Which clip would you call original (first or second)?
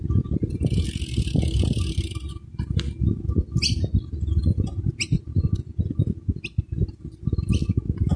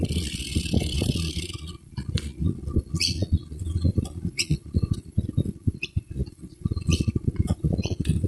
first